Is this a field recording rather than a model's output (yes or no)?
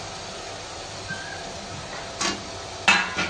yes